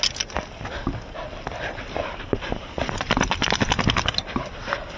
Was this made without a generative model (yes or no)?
yes